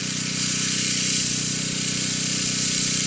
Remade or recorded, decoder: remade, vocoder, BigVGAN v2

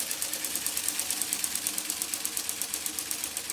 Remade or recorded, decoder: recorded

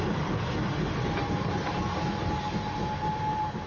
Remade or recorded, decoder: recorded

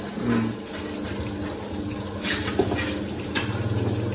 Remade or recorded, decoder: recorded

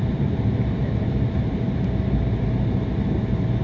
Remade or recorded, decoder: remade, vocoder, BigVGAN v2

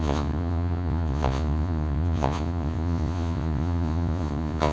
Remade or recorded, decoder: remade, vocoder, Vocos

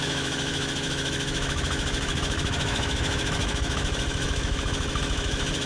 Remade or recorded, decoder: remade, autoencoder, DAC-VAE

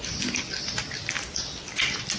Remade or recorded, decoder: recorded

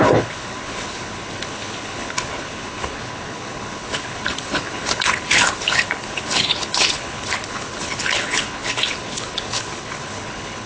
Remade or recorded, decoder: remade, codec, HILCodec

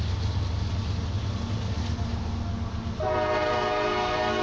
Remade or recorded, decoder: recorded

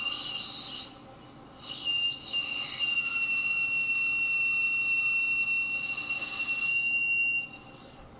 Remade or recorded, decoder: recorded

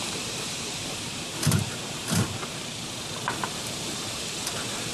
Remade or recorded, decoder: remade, vocoder, BigVGAN v2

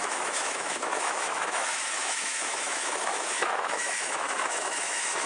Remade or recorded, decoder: remade, autoencoder, DAC-VAE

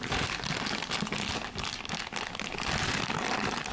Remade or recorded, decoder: recorded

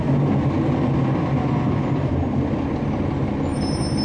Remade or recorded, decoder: recorded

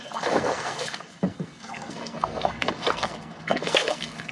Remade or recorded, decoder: remade, codec, SNAC